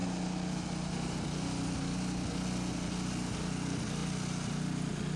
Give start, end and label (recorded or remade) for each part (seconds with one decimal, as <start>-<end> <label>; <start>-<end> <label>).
0.0-5.2 recorded